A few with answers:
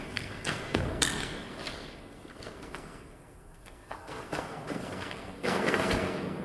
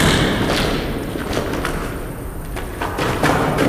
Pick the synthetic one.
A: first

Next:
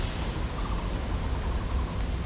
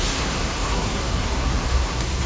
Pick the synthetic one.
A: second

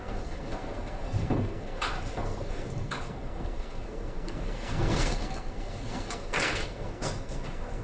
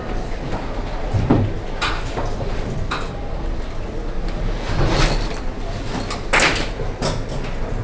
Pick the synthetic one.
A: first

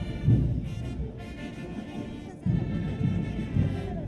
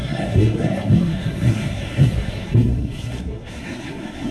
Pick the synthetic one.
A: second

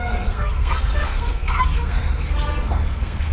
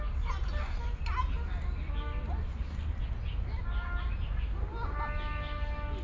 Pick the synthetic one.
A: first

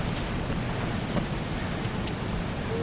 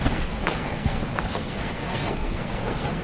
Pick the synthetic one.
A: second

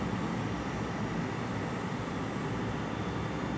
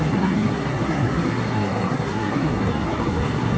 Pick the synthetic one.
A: second